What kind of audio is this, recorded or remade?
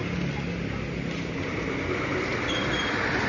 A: recorded